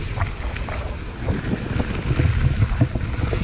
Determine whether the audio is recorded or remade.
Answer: recorded